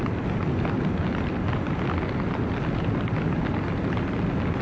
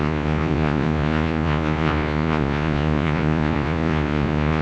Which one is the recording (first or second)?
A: first